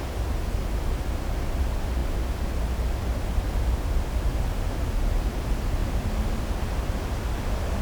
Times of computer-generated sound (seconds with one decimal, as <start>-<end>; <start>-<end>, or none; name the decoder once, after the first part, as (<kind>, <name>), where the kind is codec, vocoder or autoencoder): 5.8-6.4 (vocoder, BigVGAN v2)